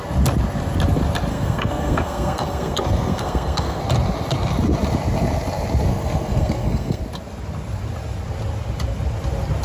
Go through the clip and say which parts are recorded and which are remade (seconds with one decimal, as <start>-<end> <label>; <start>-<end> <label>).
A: 0.0-1.3 recorded; 1.3-3.8 remade; 3.8-5.9 recorded; 5.9-7.0 remade; 7.0-9.6 recorded